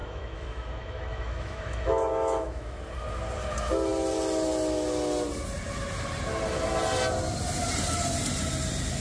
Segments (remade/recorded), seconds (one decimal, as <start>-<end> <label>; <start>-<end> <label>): 0.0-2.8 remade; 2.8-9.0 recorded